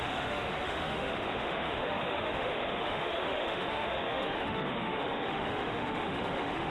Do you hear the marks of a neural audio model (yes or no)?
yes